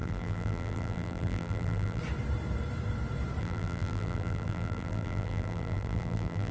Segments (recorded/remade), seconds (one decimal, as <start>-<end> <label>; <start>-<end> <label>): 0.0-2.0 remade; 2.0-3.4 recorded; 3.4-6.5 remade